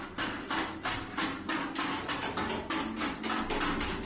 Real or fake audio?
real